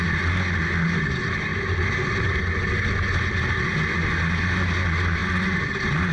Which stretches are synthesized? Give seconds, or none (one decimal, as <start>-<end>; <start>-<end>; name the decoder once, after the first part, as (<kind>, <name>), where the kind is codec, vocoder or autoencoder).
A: none